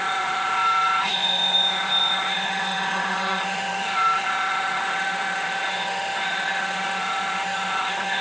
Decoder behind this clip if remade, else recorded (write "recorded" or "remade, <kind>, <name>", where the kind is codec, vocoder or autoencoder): remade, autoencoder, DAC-VAE